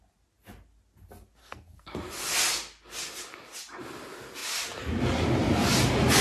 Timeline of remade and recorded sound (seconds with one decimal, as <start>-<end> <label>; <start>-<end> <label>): 0.0-1.4 recorded; 1.4-2.0 remade; 2.0-6.2 recorded